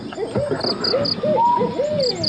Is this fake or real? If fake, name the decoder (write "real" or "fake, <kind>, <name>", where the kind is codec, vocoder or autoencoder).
real